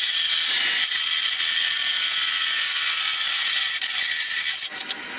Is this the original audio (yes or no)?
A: yes